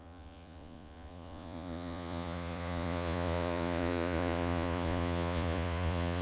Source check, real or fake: fake